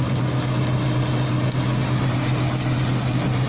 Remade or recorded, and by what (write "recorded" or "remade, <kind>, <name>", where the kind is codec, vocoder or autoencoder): recorded